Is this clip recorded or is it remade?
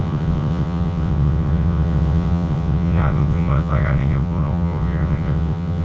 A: remade